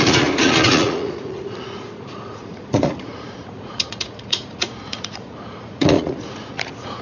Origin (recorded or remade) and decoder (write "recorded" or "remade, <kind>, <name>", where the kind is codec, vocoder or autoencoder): remade, vocoder, Vocos